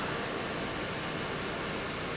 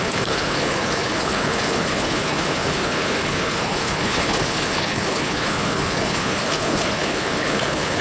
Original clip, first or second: first